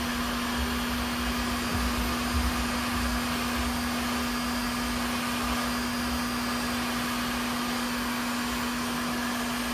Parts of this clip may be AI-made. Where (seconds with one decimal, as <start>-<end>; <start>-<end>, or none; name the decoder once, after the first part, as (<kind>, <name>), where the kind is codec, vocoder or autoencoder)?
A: none